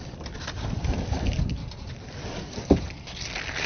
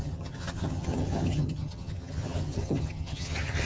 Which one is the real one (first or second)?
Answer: first